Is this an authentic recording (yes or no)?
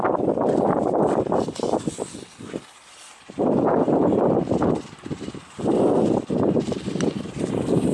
no